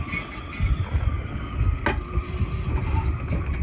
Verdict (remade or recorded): recorded